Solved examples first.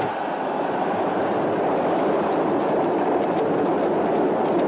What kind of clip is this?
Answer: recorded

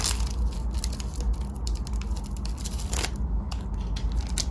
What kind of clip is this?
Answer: recorded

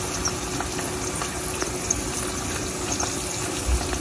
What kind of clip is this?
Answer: recorded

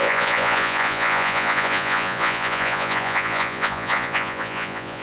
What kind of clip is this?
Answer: remade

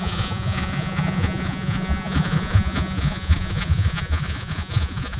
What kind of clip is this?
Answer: remade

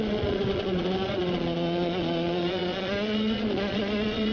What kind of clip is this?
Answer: remade